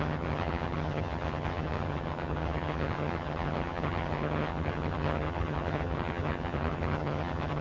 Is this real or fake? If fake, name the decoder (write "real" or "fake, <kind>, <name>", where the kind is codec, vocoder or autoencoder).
fake, vocoder, HiFi-GAN